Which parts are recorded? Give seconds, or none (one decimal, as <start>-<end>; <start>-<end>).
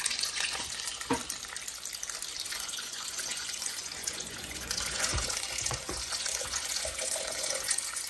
1.2-2.5